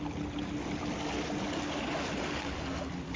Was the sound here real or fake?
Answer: real